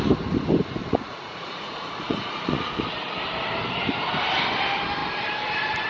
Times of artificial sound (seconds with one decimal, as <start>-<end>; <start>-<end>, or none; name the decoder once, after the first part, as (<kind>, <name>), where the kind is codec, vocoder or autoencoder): 0.8-2.8 (vocoder, Vocos)